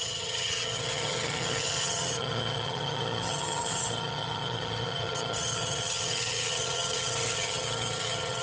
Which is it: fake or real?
fake